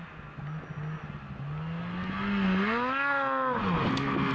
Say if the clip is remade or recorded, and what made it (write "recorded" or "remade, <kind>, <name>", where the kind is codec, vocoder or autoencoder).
recorded